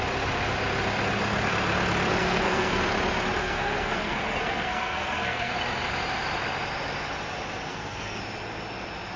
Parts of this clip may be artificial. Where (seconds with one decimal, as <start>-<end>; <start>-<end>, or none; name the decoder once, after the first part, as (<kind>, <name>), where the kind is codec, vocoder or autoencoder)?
2.2-2.8 (codec, SNAC); 3.4-5.5; 7.7-8.2